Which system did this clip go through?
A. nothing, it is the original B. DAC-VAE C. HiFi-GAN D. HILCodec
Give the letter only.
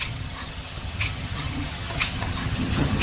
C